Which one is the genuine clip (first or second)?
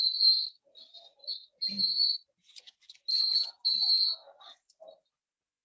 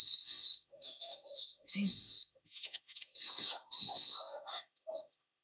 first